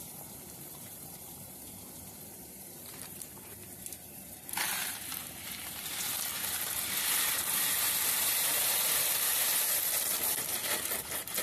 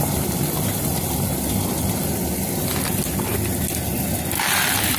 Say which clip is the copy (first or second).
first